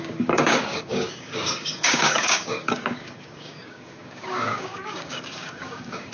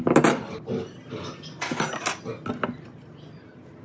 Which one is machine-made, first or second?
first